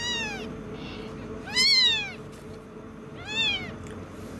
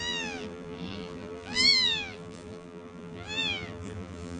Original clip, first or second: first